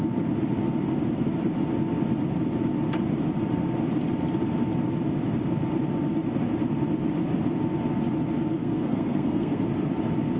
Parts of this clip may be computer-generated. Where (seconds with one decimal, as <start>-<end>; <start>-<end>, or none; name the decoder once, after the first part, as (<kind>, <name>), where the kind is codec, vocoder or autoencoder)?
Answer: 8.6-9.6 (codec, SNAC)